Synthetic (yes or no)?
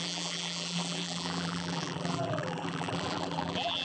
yes